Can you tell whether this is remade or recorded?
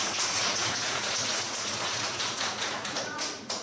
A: remade